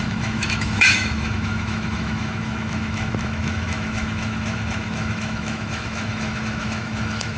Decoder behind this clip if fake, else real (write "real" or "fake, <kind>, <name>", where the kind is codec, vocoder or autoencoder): fake, autoencoder, DAC-VAE